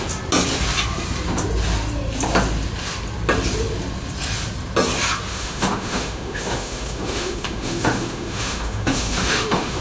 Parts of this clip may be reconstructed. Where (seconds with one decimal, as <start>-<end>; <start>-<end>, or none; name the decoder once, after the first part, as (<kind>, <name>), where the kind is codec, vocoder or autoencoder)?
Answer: 5.3-9.8 (autoencoder, DAC-VAE)